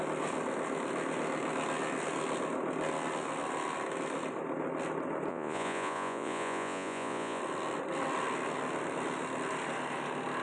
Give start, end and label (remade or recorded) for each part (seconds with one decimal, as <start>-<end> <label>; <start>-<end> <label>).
0.0-5.3 recorded; 5.3-7.4 remade; 7.4-10.4 recorded